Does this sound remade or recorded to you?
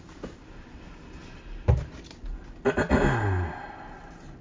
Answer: recorded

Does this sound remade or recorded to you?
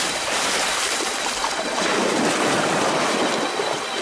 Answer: recorded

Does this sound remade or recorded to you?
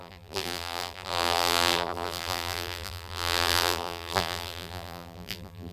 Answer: remade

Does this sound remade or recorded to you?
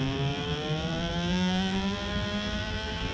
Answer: remade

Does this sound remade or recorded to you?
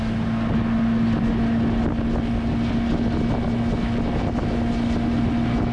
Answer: recorded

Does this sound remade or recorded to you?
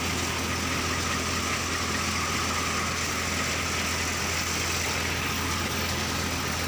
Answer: recorded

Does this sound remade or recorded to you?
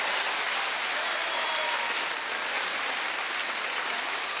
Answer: recorded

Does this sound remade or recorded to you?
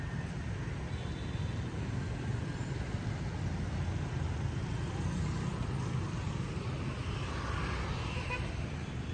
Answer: remade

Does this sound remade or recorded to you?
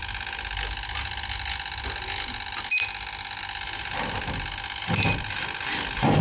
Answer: recorded